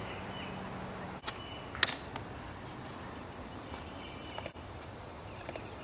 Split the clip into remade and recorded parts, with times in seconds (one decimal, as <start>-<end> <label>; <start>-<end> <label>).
0.0-3.1 recorded; 3.1-5.8 remade

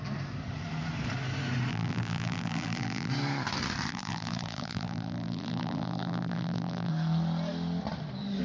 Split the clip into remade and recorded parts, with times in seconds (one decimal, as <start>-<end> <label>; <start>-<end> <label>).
0.0-1.7 recorded; 1.7-3.1 remade; 3.1-3.9 recorded; 3.9-6.9 remade; 6.9-8.4 recorded

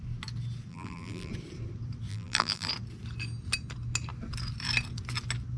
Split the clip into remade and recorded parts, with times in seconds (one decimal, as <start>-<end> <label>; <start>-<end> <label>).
0.0-0.7 recorded; 0.7-1.3 remade; 1.3-2.1 recorded; 2.1-2.7 remade; 2.7-5.6 recorded

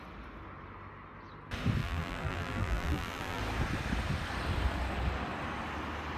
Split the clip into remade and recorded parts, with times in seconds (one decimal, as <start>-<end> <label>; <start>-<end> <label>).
0.0-1.8 recorded; 1.8-3.4 remade; 3.4-6.2 recorded

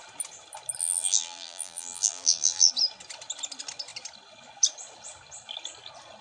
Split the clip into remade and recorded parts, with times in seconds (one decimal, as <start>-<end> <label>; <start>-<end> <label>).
0.0-0.8 recorded; 0.8-2.7 remade; 2.7-6.2 recorded

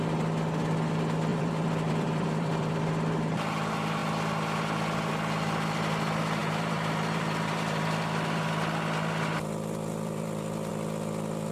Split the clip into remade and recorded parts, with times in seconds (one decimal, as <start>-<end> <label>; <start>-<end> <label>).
0.0-1.3 recorded; 1.3-2.8 remade; 2.8-6.4 recorded; 6.4-10.7 remade; 10.7-11.5 recorded

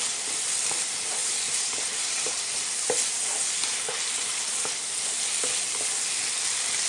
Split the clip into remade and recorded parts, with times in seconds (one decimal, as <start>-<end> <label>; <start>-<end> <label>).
0.0-1.2 recorded; 1.2-4.9 remade; 4.9-6.9 recorded